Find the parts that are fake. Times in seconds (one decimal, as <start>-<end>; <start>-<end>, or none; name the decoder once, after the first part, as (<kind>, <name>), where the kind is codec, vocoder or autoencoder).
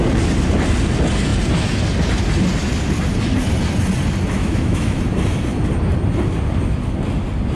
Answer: 4.4-5.0 (autoencoder, DAC-VAE)